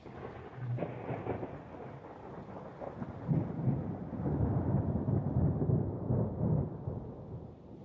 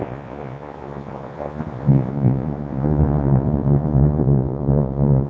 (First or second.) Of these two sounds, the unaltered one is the first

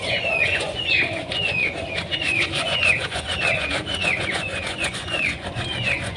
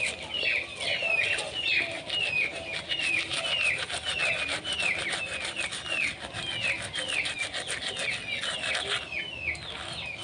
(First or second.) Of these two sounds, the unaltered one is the second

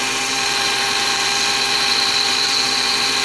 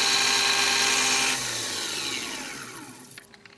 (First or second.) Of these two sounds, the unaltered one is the second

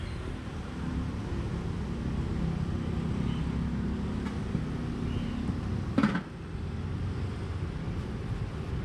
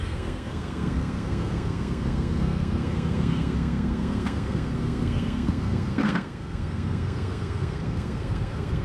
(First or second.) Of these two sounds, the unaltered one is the first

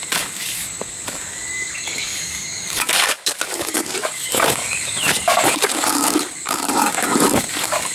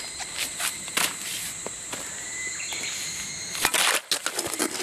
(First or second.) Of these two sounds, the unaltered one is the second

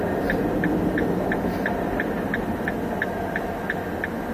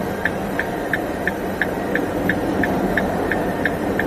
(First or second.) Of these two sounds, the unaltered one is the first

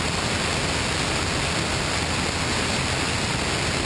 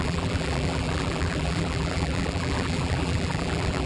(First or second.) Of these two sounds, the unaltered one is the first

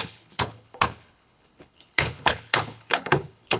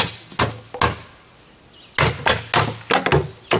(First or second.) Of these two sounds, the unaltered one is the second